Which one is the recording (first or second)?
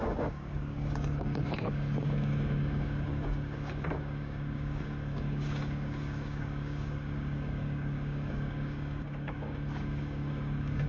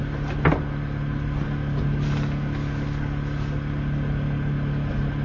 second